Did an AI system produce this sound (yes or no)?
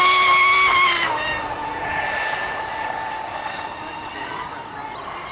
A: no